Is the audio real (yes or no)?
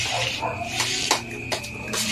yes